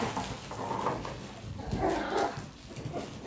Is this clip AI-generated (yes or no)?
no